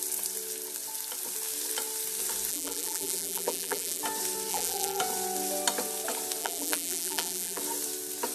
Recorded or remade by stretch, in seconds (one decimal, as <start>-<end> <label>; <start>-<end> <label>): 0.0-2.5 recorded; 2.5-4.0 remade; 4.0-4.5 recorded; 4.5-5.0 remade; 5.0-6.4 recorded; 6.4-7.6 remade; 7.6-8.3 recorded